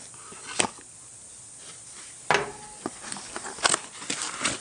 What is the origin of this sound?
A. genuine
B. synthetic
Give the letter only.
A